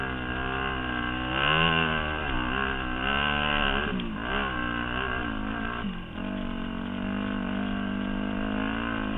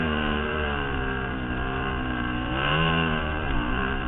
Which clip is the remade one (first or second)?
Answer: second